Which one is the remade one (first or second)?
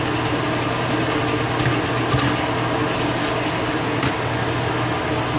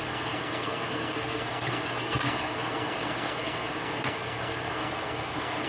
second